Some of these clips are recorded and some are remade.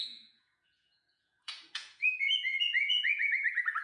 remade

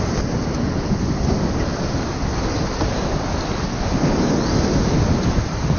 recorded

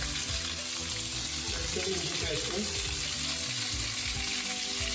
recorded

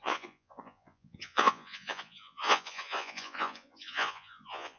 remade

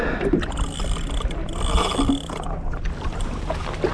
recorded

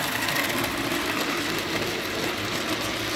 recorded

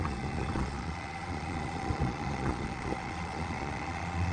remade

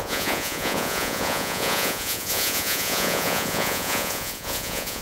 remade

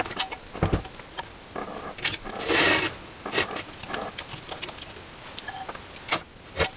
recorded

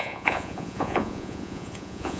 remade